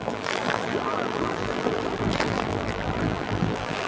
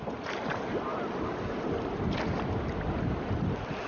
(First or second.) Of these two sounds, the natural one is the second